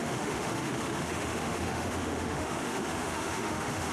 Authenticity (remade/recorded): remade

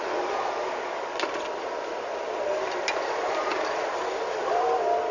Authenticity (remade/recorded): recorded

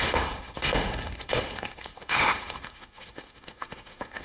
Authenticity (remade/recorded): remade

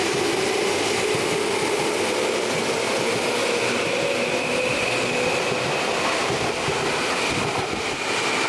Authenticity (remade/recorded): recorded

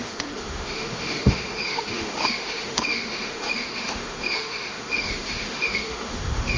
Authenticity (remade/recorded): remade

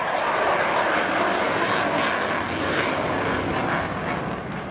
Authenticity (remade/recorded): recorded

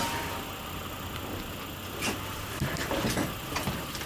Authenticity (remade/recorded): recorded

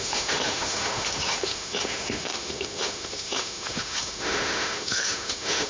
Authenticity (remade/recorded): remade